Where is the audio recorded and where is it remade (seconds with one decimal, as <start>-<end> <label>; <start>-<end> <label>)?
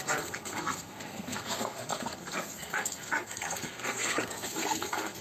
0.0-5.2 remade